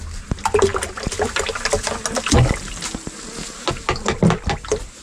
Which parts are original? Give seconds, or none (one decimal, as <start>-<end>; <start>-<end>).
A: 0.0-5.0

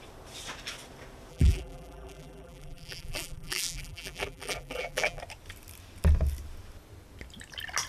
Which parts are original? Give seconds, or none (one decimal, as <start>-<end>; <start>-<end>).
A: 0.0-1.3; 5.2-7.9

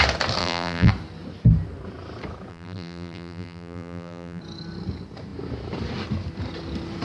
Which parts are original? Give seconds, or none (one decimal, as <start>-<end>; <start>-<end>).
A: 0.0-0.4; 0.9-2.5; 4.4-7.0

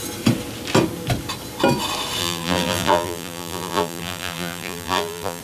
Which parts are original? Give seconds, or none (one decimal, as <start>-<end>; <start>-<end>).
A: 0.0-2.2